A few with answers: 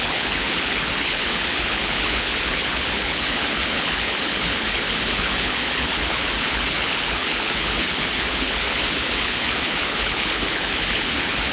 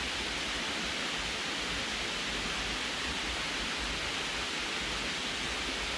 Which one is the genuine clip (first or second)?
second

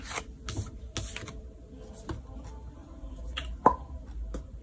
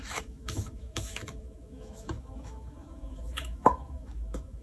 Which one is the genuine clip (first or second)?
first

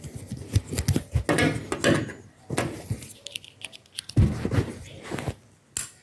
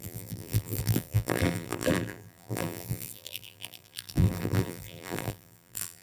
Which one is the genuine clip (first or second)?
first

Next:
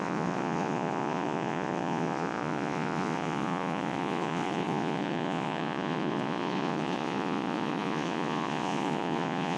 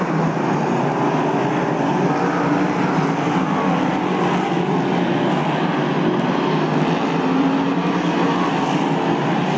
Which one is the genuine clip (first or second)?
second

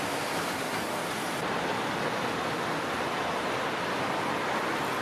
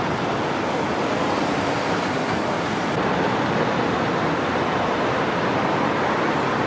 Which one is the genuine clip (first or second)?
first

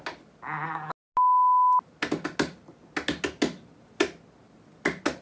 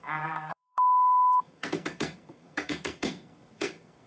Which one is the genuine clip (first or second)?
first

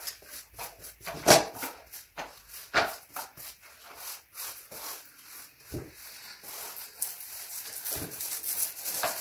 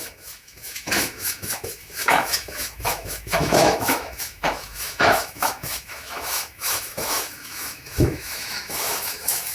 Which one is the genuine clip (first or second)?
first